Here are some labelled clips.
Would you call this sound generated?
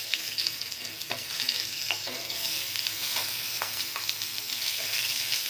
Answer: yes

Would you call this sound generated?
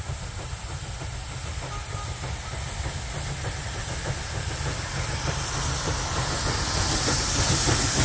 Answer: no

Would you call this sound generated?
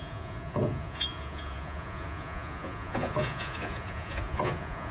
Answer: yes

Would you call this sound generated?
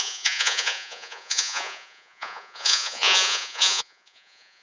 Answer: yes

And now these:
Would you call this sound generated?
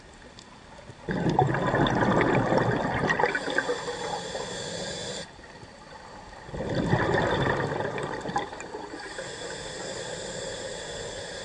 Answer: no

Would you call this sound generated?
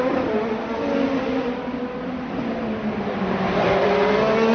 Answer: no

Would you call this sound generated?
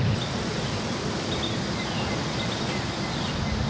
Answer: no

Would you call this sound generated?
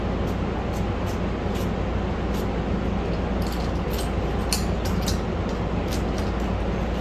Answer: no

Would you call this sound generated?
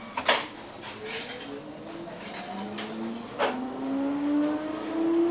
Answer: no